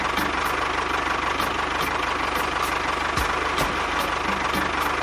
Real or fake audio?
real